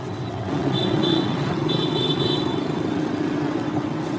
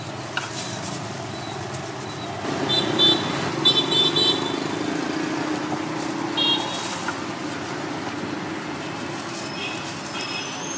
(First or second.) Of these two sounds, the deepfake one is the first